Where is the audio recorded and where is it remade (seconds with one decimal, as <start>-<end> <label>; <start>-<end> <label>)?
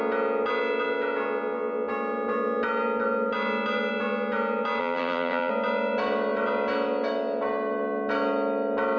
0.0-4.8 recorded; 4.8-5.5 remade; 5.5-9.0 recorded